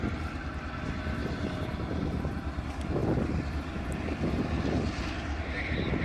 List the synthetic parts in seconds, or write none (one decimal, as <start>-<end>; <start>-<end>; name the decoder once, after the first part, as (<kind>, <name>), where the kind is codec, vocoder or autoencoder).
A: 1.2-2.4 (vocoder, BigVGAN v2)